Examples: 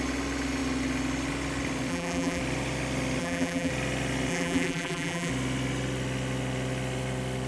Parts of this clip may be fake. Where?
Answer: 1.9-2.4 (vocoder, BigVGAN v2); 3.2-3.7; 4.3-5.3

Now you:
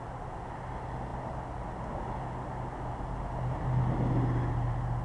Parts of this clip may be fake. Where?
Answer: none

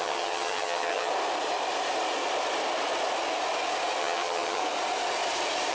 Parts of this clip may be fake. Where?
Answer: 0.0-1.1 (vocoder, HiFi-GAN); 4.0-4.6